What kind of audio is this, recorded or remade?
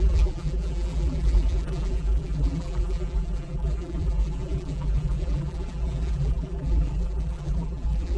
remade